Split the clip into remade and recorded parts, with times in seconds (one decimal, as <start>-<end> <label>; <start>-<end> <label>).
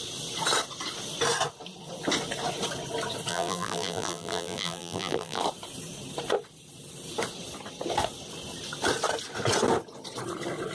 0.0-3.3 recorded; 3.3-5.4 remade; 5.4-10.7 recorded